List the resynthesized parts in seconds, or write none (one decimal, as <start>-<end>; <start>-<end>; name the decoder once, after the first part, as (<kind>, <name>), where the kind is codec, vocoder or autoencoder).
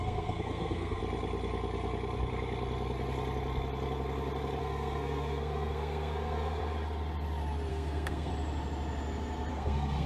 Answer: 0.0-1.0 (codec, SNAC); 4.6-6.6; 7.7-8.3; 9.5-10.1